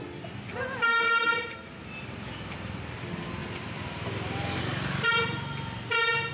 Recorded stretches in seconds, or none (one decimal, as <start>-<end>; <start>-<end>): 0.0-6.3

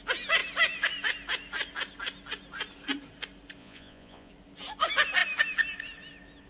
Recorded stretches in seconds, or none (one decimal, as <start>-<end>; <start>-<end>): 0.0-3.6; 4.3-6.5